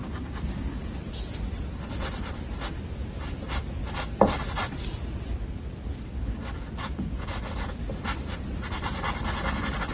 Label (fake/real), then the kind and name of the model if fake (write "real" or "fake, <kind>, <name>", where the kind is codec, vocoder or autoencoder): real